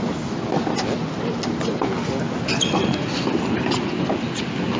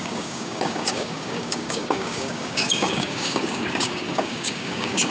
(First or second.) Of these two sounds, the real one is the first